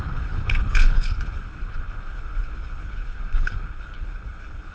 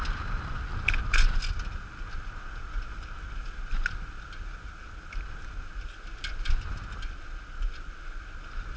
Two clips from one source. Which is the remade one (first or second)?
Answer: first